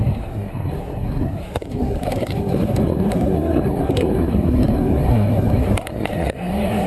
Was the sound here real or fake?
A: fake